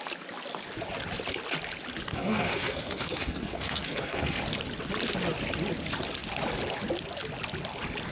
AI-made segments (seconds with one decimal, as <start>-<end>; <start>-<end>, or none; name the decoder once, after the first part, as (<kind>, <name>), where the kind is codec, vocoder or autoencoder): 2.1-4.4 (codec, SNAC)